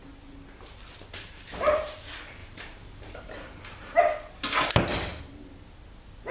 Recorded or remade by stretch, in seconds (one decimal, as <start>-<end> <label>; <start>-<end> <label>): 0.0-2.4 recorded; 2.4-4.0 remade; 4.0-6.3 recorded